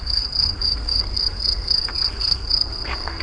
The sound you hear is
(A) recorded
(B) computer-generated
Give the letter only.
B